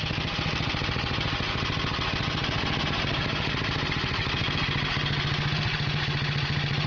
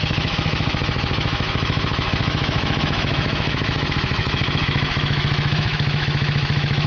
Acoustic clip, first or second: first